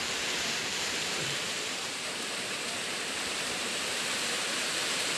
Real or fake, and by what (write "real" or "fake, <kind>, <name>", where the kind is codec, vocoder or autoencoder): fake, vocoder, BigVGAN v2